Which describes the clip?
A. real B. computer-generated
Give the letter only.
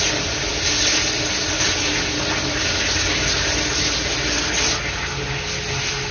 A